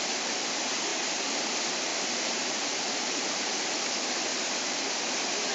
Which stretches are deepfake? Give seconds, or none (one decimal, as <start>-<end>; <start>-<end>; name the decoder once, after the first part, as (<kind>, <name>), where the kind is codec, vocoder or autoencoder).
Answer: 0.9-1.4 (vocoder, BigVGAN v2); 1.9-3.5; 4.3-4.8